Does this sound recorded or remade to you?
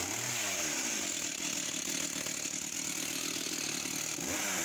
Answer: recorded